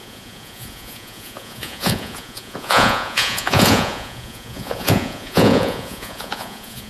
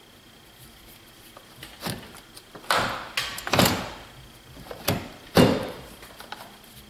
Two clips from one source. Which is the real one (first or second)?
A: second